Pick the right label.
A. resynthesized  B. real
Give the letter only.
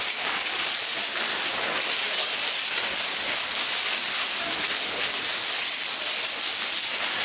B